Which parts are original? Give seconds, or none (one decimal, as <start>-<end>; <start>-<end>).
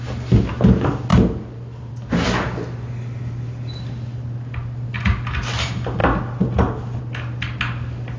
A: 0.0-8.2